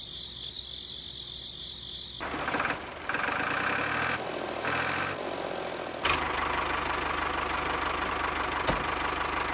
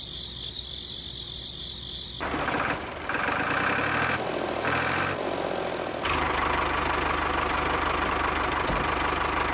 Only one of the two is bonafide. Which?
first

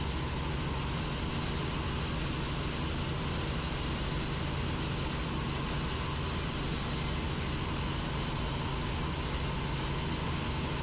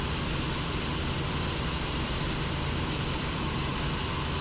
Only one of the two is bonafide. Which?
first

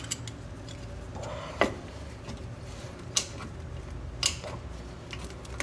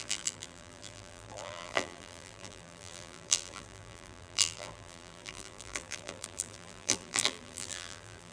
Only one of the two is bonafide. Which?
first